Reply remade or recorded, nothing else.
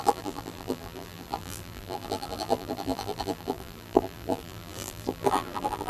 remade